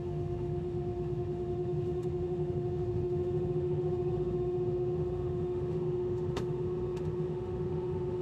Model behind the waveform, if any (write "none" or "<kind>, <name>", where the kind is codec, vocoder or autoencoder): autoencoder, DAC-VAE